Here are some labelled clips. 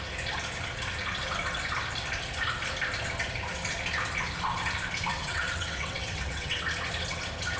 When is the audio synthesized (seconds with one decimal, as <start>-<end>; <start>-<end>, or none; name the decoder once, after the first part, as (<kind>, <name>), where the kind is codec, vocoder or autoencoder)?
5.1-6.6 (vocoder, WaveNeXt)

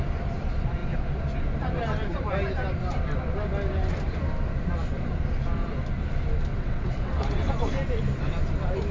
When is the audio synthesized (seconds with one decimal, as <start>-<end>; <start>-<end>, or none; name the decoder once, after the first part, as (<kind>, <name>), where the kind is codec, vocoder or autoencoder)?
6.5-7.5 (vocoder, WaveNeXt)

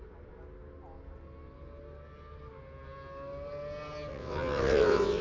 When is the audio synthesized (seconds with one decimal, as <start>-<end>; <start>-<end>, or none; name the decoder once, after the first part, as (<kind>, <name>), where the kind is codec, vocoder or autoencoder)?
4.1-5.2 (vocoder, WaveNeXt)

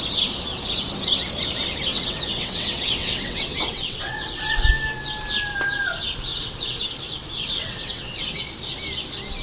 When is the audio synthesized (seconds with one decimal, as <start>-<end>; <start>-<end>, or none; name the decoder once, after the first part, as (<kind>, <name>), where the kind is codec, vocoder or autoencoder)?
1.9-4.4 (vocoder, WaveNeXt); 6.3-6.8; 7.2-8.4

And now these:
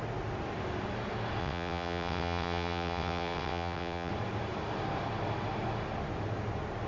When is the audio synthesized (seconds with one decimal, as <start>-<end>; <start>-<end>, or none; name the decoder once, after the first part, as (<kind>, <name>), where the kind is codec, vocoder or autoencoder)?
1.4-4.1 (vocoder, WaveNeXt)

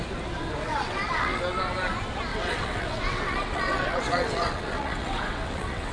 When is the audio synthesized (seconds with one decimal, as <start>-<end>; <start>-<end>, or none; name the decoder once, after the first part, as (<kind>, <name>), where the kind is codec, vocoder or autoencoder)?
0.6-1.4 (vocoder, WaveNeXt); 2.3-5.9

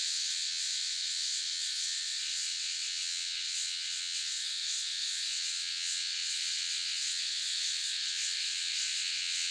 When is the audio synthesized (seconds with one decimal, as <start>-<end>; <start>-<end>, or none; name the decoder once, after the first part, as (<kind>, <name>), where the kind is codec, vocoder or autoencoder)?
0.0-9.5 (vocoder, WaveNeXt)

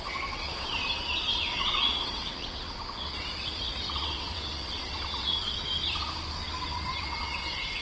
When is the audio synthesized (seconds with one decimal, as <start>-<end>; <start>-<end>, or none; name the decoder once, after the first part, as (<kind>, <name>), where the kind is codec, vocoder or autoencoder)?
0.0-0.8 (vocoder, WaveNeXt); 1.3-5.7; 6.6-7.8